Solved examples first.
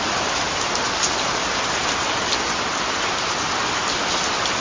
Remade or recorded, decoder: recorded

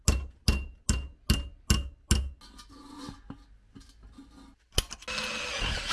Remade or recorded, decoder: recorded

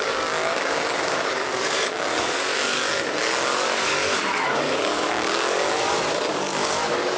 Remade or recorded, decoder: remade, codec, DAC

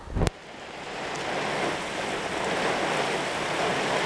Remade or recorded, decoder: recorded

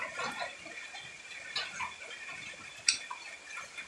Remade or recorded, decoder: recorded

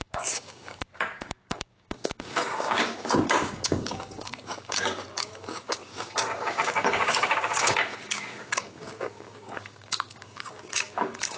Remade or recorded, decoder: remade, codec, DAC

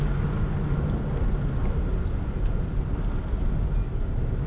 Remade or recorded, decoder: recorded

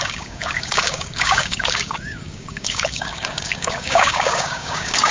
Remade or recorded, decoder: remade, codec, DAC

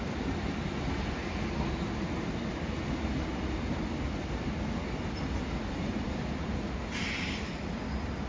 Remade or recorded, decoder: recorded